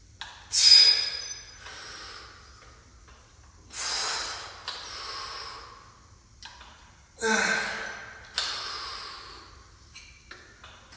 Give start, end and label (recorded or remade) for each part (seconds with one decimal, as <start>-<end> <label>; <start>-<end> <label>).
0.0-11.0 recorded